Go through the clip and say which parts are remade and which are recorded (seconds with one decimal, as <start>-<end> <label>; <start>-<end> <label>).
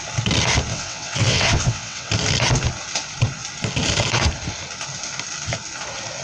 0.0-0.7 recorded; 0.7-2.1 remade; 2.1-6.2 recorded